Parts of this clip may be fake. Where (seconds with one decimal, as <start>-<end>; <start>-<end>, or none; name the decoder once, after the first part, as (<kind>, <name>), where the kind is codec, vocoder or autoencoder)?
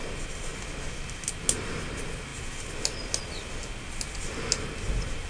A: none